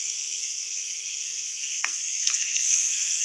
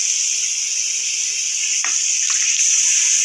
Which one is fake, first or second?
first